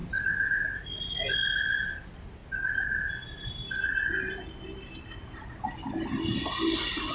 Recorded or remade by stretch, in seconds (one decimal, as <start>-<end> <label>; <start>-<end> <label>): 0.0-7.1 recorded